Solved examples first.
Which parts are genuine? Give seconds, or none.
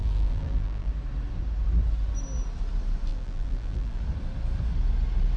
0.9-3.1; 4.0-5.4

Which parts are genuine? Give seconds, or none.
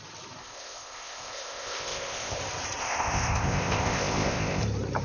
0.0-0.4; 2.4-2.8; 4.6-5.0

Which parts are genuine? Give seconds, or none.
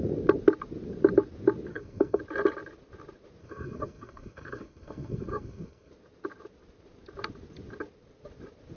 0.0-1.7; 2.2-3.4; 5.9-8.8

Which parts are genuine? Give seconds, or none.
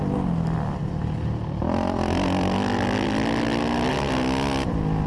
0.0-5.1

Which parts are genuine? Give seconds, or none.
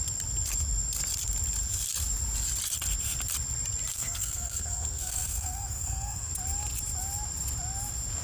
0.0-3.9; 6.3-8.2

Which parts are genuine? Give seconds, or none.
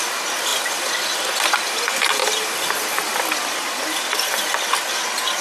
0.0-5.4